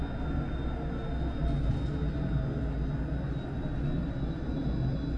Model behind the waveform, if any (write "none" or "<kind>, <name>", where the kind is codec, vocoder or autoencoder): none